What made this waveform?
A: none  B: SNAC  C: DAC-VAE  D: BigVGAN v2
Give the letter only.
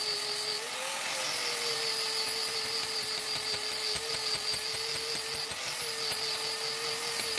A